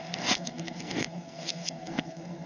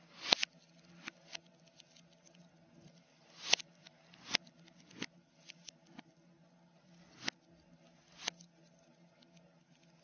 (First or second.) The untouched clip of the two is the second